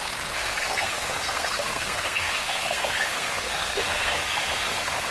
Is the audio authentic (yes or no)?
no